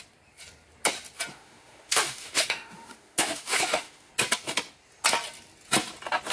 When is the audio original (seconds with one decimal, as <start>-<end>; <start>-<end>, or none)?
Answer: 0.0-1.3; 4.1-6.3